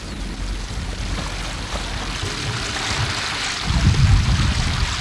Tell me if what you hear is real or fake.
real